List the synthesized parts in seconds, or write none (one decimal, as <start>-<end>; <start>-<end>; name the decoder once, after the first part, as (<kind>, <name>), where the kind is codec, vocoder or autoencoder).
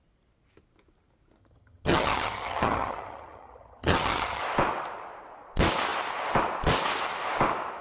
1.4-4.4 (vocoder, HiFi-GAN)